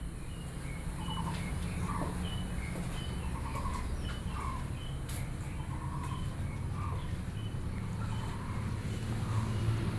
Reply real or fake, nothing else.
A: real